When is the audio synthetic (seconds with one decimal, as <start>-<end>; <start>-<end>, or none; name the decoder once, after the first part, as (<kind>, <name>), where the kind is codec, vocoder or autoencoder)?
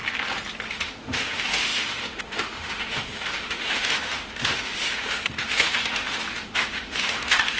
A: 0.7-7.6 (autoencoder, DAC-VAE)